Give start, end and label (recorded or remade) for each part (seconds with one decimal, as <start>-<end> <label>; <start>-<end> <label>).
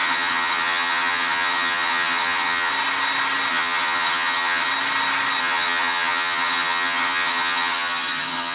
0.0-2.7 remade; 2.7-3.5 recorded; 3.5-4.7 remade; 4.7-5.4 recorded; 5.4-8.5 remade